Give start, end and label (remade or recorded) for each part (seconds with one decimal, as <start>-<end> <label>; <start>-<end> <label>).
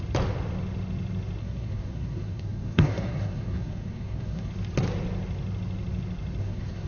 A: 0.0-1.4 recorded; 1.4-4.5 remade; 4.5-6.4 recorded; 6.4-6.9 remade